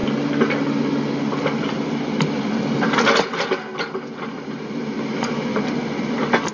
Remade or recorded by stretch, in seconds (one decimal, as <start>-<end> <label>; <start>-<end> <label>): 0.0-1.6 recorded; 1.6-2.6 remade; 2.6-3.7 recorded; 3.7-6.5 remade